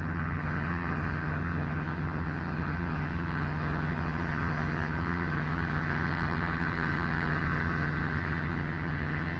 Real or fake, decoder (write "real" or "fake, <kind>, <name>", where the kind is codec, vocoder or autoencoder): fake, vocoder, HiFi-GAN